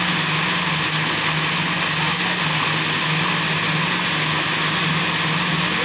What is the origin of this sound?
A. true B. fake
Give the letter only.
A